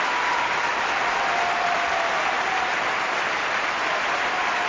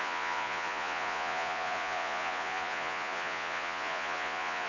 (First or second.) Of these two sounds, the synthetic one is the second